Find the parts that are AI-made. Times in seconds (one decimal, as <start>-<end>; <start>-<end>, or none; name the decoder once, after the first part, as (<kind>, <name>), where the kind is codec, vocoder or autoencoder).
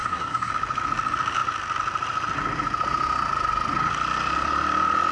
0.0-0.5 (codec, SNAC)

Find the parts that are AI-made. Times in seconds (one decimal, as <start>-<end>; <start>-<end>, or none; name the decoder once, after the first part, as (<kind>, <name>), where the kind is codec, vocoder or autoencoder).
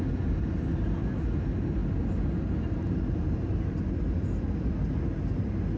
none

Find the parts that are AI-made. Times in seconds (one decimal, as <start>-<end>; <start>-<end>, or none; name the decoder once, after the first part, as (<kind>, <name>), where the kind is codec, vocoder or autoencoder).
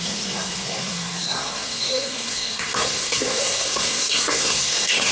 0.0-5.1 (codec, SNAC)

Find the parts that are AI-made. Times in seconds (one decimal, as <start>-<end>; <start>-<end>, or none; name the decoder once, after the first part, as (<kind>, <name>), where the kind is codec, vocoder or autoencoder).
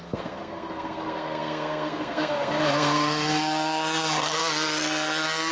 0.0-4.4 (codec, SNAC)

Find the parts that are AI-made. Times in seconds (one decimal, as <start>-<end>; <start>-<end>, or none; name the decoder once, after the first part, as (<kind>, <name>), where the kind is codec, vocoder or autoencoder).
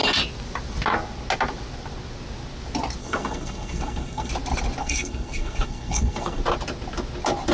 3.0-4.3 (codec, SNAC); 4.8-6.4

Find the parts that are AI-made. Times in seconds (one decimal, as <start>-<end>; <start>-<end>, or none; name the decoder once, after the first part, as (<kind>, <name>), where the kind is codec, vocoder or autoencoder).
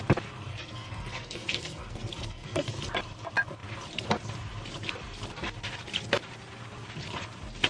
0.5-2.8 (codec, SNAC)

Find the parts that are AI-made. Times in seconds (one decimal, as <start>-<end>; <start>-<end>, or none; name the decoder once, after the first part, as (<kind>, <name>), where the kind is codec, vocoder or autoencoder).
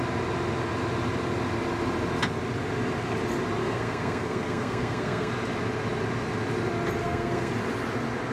3.6-5.3 (codec, SNAC); 7.0-7.5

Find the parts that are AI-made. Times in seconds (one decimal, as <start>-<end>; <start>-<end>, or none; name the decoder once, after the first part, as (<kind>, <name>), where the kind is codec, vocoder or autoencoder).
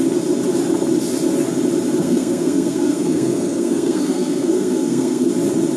2.0-5.3 (codec, SNAC)